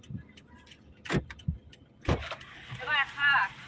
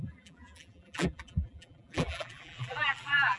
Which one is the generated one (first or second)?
second